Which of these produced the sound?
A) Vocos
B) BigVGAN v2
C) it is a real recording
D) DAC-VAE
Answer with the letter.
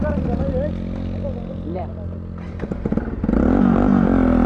C